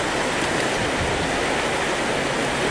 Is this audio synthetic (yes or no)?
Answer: no